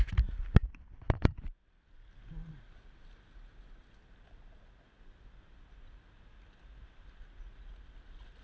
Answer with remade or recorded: recorded